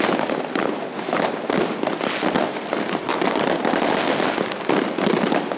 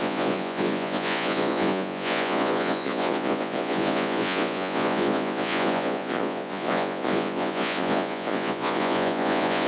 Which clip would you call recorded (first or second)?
first